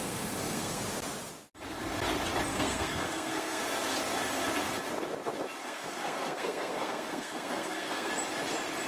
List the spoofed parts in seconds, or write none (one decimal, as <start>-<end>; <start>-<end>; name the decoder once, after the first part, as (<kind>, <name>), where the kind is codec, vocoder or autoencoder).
0.0-0.8 (codec, SNAC); 2.5-3.6; 5.6-8.1